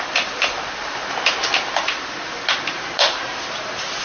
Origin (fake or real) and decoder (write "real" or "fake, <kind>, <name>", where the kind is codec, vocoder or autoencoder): fake, vocoder, BigVGAN v2